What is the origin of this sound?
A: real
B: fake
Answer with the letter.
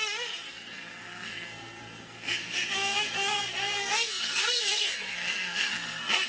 B